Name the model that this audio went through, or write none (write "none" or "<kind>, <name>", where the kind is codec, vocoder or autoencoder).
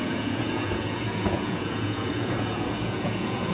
vocoder, Vocos